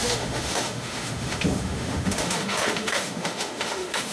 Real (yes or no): no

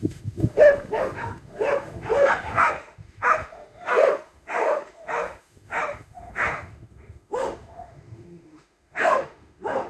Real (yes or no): no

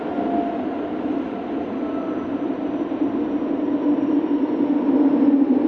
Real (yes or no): yes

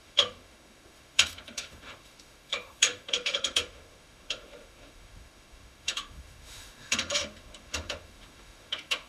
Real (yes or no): no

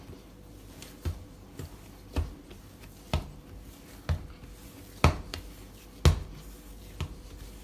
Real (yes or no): yes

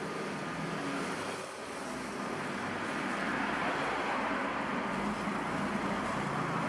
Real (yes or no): yes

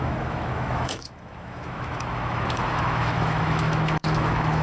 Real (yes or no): no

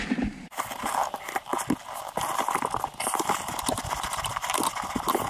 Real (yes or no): yes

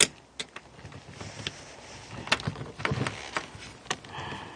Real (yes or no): yes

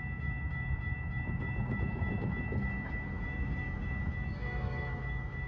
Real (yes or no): no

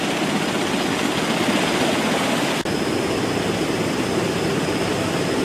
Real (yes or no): yes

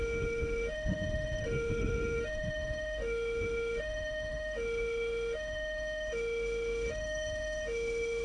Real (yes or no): no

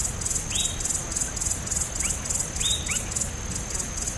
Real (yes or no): yes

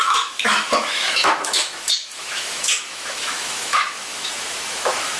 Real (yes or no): no